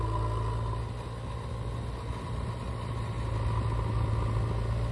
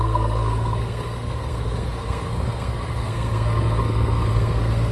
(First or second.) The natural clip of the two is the first